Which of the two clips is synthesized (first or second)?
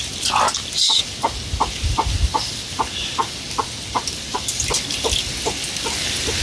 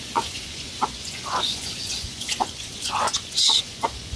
second